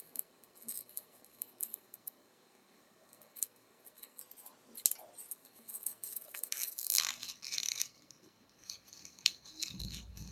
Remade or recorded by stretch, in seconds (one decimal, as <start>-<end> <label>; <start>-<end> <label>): 0.0-4.2 remade; 4.2-5.3 recorded; 5.3-10.3 remade